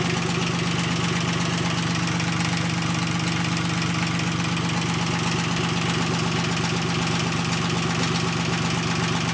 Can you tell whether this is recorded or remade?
recorded